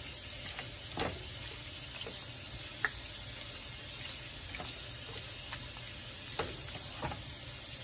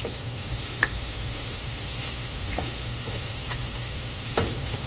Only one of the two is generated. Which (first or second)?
second